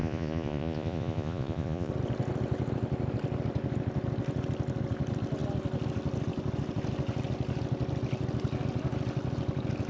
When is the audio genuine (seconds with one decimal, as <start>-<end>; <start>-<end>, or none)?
1.9-9.9